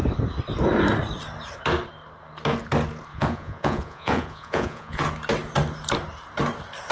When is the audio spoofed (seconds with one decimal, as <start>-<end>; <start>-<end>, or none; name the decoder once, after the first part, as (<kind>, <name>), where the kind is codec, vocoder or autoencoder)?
3.1-5.0 (vocoder, Vocos)